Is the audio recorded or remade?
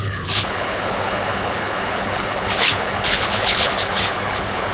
remade